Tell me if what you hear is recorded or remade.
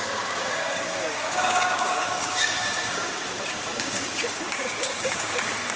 remade